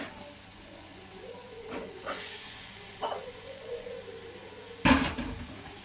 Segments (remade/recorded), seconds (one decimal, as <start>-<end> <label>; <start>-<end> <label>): 0.0-0.5 recorded; 0.5-4.0 remade; 4.0-5.8 recorded